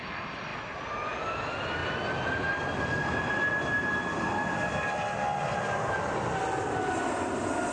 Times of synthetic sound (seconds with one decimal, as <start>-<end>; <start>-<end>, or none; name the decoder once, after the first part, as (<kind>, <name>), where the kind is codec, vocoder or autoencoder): none